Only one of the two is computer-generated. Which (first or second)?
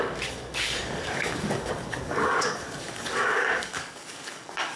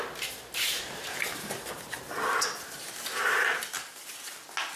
first